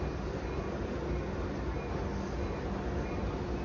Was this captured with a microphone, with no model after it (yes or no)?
yes